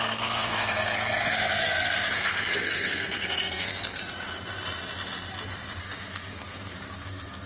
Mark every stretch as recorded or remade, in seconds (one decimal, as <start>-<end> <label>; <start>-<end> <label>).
0.0-4.0 remade; 4.0-5.8 recorded; 5.8-7.5 remade